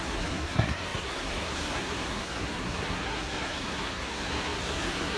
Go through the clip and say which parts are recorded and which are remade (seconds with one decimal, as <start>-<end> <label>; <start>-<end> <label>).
0.0-5.2 remade